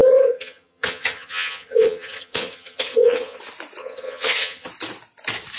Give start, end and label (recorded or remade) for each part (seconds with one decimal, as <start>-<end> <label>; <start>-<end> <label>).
0.0-3.4 remade; 3.4-3.8 recorded; 3.8-4.7 remade; 4.7-5.6 recorded